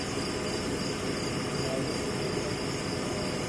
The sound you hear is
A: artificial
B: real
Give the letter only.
B